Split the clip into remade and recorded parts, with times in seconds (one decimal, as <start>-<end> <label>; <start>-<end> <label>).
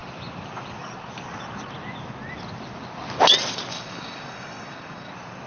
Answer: 0.0-3.7 recorded; 3.7-5.1 remade; 5.1-5.5 recorded